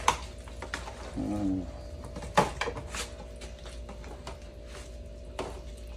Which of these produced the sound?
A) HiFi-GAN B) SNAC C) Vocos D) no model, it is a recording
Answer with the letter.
D